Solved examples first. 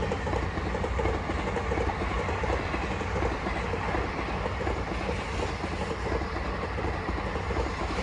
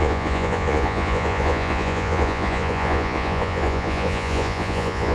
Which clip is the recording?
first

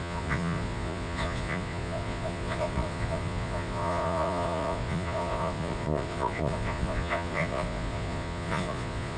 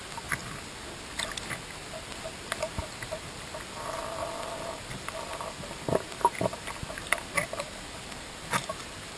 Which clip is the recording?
second